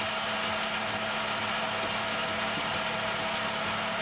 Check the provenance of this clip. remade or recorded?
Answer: recorded